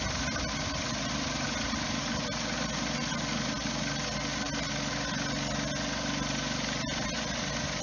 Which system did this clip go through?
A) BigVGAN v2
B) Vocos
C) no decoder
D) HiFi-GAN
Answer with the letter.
C